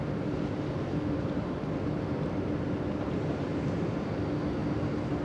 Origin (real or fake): real